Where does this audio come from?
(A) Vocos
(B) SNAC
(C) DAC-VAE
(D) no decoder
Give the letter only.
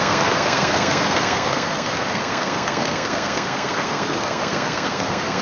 B